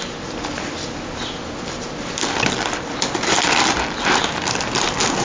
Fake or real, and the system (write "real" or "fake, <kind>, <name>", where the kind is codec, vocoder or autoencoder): real